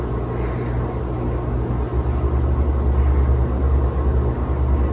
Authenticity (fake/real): real